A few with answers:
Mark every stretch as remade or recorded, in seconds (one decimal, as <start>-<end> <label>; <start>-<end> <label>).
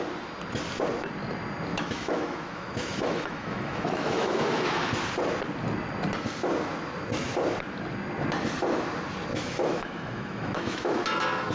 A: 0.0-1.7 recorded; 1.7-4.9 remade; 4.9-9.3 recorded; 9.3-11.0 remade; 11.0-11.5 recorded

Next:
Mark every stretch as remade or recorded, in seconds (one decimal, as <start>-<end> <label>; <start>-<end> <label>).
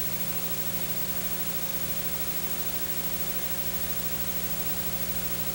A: 0.0-5.5 recorded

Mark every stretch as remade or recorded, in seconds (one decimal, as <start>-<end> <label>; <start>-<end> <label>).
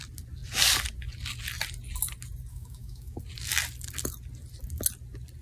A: 0.0-2.5 recorded; 2.5-3.2 remade; 3.2-5.4 recorded